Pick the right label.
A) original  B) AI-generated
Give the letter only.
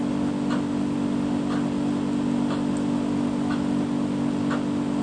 A